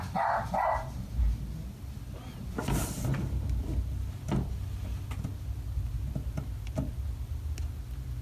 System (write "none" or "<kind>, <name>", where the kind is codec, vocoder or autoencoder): none